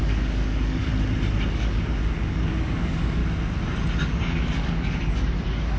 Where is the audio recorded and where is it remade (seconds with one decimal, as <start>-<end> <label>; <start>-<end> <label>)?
0.0-0.9 remade; 0.9-1.5 recorded; 1.5-3.2 remade; 3.2-4.0 recorded; 4.0-5.8 remade